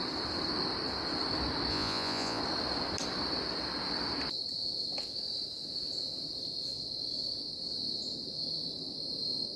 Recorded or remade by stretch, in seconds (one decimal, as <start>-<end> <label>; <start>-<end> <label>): 0.0-1.7 recorded; 1.7-2.4 remade; 2.4-9.6 recorded